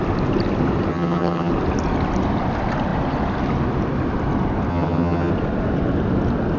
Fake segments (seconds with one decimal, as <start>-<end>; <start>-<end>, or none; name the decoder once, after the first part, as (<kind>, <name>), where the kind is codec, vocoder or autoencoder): 0.9-1.5 (vocoder, HiFi-GAN); 4.7-5.3